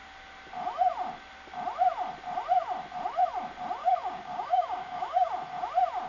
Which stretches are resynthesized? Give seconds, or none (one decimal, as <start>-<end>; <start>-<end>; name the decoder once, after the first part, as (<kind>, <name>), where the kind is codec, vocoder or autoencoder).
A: 3.8-5.3 (codec, DAC)

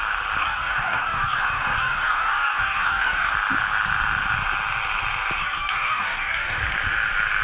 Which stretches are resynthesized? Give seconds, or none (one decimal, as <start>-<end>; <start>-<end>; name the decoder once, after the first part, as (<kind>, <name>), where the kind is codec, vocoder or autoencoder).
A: 0.4-3.3 (codec, DAC); 5.4-6.6

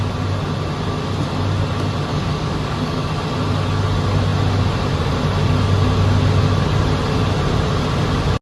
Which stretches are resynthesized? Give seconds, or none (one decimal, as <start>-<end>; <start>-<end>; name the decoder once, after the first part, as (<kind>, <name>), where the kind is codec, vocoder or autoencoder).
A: 2.1-3.1 (codec, DAC)

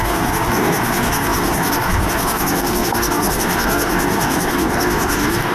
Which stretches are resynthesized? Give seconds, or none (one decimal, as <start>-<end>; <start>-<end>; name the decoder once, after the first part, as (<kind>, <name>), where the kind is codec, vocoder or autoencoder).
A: 0.0-5.5 (codec, DAC)

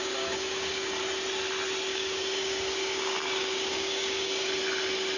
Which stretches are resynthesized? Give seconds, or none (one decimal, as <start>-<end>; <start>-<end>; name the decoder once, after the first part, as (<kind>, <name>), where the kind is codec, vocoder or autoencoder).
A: 0.0-1.0 (codec, DAC); 1.9-4.5

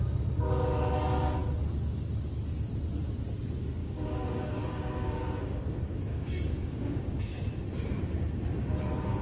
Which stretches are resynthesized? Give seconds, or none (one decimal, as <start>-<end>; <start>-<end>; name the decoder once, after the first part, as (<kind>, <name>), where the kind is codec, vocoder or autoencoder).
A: 3.8-5.6 (codec, DAC); 6.1-7.6

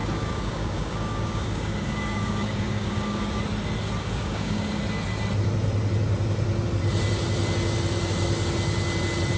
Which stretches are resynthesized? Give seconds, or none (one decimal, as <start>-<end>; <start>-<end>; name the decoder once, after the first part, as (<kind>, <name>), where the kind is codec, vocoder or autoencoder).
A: 0.0-3.4 (codec, DAC); 4.0-4.8

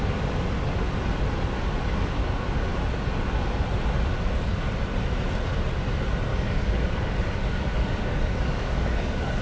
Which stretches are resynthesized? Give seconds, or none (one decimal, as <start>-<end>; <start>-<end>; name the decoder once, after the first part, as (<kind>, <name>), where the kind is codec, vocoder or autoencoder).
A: 6.3-9.4 (codec, DAC)